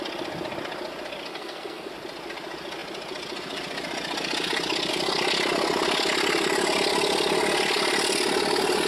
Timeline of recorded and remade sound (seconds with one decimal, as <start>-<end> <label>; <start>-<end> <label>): 0.0-1.3 recorded; 1.3-1.9 remade; 1.9-8.9 recorded